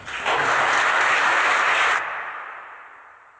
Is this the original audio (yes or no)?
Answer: yes